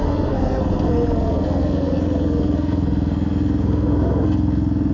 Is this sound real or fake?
fake